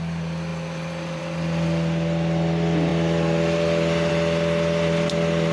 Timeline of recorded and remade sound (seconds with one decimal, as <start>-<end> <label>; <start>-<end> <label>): 0.0-0.5 recorded; 0.5-1.2 remade; 1.2-5.5 recorded